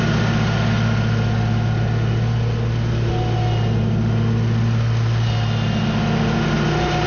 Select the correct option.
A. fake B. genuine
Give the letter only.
B